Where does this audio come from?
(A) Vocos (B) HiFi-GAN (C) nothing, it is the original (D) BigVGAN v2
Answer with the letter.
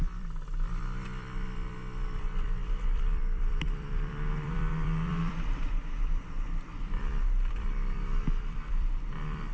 D